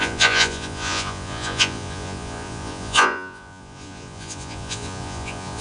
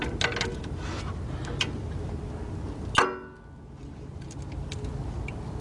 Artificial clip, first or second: first